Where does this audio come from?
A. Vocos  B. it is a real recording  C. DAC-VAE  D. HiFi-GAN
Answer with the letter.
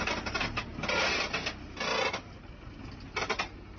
B